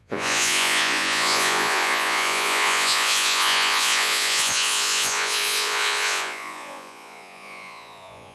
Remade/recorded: remade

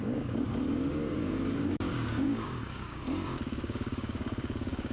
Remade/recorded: remade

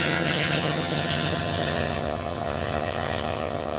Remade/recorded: remade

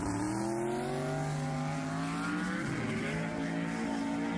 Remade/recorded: recorded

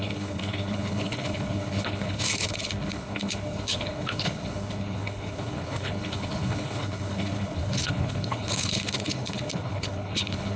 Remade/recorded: remade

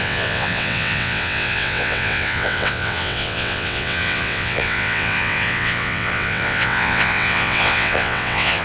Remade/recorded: remade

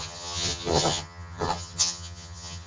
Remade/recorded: remade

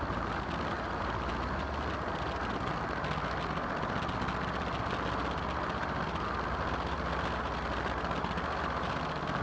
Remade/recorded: recorded